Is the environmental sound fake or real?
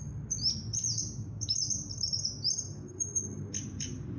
real